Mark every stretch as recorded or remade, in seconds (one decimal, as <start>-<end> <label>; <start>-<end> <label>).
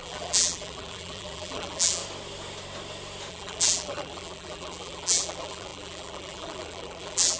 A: 0.0-2.0 remade; 2.0-3.3 recorded; 3.3-7.4 remade